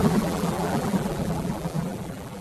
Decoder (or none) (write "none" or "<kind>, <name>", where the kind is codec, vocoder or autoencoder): vocoder, BigVGAN v2